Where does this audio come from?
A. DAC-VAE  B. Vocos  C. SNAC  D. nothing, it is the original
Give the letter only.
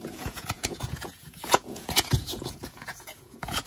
B